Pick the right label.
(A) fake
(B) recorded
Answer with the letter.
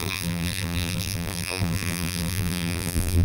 A